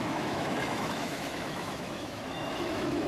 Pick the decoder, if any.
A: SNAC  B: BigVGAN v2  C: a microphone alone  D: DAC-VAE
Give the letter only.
D